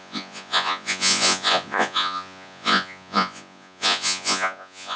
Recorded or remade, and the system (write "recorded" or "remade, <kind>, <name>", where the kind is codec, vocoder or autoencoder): remade, vocoder, Vocos